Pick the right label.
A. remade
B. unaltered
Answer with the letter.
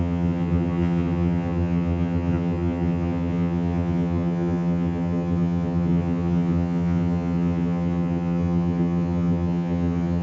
A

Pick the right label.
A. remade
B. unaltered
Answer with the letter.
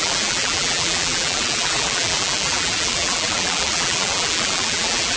A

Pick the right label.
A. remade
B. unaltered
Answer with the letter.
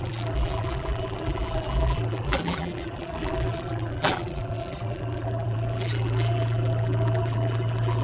A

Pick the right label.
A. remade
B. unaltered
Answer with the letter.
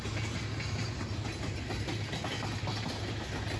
B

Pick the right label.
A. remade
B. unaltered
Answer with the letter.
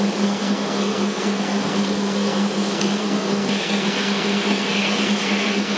A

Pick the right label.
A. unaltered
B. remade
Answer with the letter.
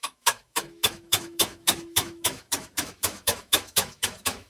B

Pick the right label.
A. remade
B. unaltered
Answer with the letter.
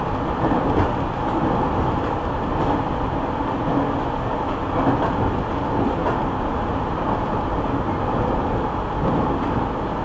B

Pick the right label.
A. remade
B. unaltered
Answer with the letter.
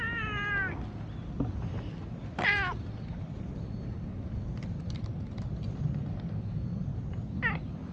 B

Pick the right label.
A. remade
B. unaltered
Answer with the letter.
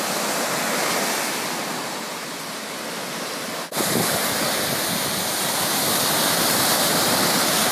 B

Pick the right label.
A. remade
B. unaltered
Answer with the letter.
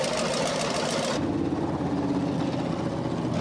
B